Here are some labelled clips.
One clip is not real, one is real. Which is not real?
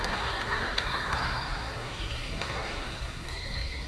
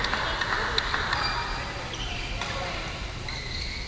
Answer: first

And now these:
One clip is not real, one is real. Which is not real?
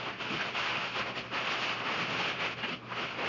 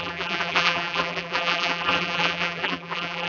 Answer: second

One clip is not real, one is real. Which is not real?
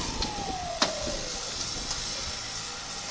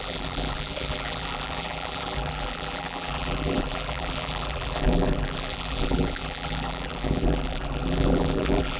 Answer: second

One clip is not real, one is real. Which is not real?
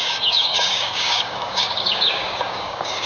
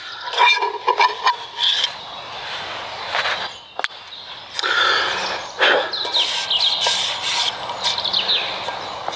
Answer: first